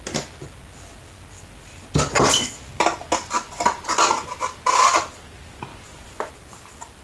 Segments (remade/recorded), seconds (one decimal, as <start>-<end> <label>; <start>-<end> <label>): 0.0-5.7 recorded; 5.7-6.3 remade; 6.3-7.0 recorded